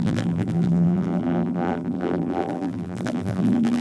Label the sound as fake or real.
fake